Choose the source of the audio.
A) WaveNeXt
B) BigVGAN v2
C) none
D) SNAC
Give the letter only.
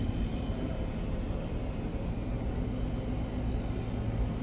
C